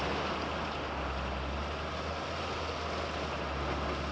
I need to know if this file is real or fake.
real